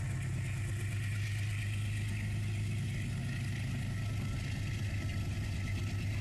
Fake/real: real